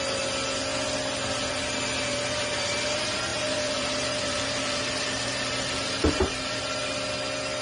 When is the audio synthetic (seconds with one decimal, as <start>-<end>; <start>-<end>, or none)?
3.3-7.1